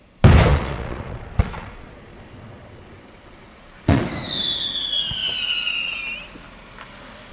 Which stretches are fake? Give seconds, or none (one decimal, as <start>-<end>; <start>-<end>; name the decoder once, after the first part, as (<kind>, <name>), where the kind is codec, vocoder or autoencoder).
0.5-4.0 (vocoder, Vocos)